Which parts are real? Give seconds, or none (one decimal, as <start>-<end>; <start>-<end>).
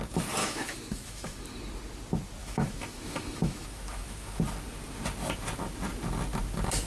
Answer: 0.0-0.4; 1.5-2.4; 4.4-6.9